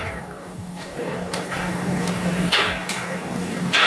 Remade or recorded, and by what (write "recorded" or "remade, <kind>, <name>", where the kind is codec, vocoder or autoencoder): remade, codec, DAC